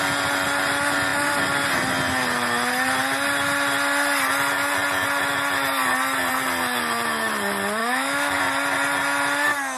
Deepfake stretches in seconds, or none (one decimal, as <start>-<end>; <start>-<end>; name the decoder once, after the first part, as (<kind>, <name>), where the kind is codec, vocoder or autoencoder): 7.8-8.4 (autoencoder, DAC-VAE)